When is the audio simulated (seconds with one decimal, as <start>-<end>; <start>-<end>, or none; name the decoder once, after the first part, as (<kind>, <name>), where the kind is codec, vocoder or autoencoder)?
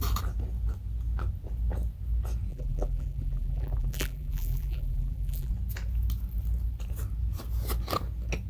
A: 2.5-5.5 (vocoder, BigVGAN v2)